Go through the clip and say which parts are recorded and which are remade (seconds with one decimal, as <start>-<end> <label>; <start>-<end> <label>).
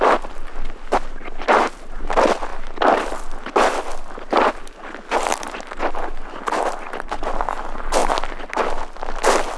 0.0-9.6 recorded